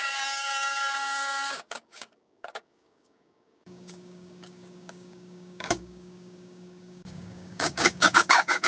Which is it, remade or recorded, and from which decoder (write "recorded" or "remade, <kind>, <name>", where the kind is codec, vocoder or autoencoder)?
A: remade, codec, DAC